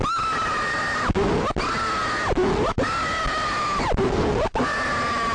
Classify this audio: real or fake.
real